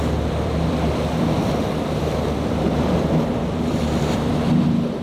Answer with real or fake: fake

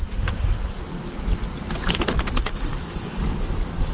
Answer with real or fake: real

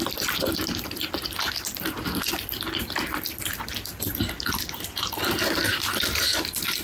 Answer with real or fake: real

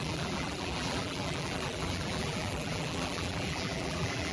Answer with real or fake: fake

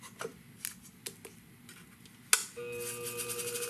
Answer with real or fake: real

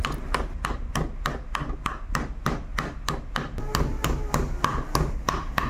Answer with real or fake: real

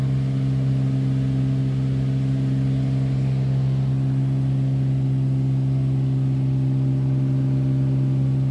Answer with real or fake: real